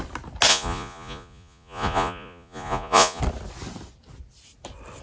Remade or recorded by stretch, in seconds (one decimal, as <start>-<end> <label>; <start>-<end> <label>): 0.0-0.5 recorded; 0.5-3.2 remade; 3.2-5.0 recorded